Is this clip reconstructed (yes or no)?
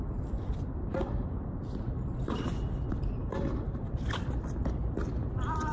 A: yes